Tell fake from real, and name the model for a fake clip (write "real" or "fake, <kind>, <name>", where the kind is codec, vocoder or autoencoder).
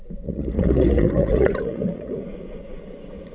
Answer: fake, vocoder, Vocos